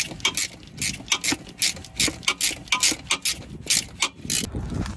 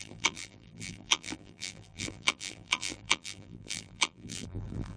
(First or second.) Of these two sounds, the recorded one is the first